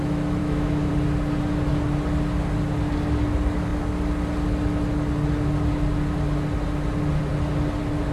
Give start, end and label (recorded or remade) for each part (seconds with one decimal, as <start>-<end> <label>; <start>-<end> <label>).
0.0-0.4 recorded; 0.4-0.9 remade; 0.9-8.1 recorded